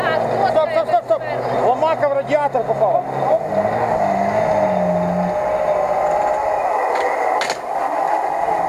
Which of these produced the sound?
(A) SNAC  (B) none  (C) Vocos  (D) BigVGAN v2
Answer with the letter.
B